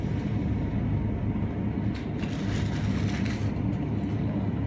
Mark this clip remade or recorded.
recorded